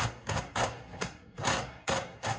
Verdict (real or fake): fake